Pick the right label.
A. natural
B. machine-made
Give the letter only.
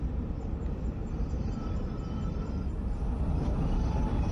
A